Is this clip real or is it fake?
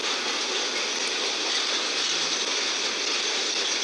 real